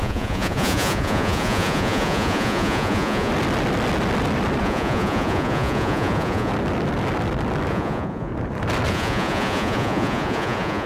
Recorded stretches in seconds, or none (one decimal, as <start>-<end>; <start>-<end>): 3.3-4.6; 6.5-7.7; 8.3-8.9